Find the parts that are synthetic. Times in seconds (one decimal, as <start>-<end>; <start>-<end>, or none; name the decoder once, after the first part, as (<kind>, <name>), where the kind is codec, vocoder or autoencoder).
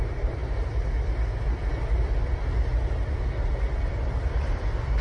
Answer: none